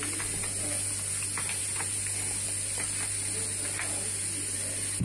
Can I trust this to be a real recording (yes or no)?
yes